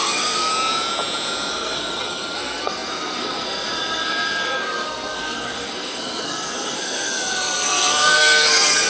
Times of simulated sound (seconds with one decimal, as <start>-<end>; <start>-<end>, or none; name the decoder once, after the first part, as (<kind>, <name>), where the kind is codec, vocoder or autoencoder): 0.0-0.5 (codec, SNAC); 1.5-8.9